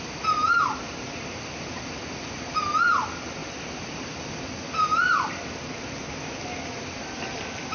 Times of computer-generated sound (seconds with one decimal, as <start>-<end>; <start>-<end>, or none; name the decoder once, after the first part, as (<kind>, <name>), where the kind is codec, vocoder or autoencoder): none